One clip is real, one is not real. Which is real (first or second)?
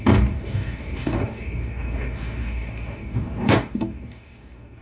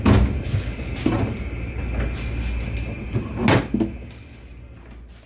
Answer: second